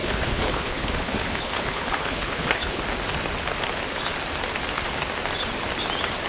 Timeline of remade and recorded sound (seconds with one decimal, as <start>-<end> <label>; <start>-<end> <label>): 0.0-2.8 remade; 2.8-6.3 recorded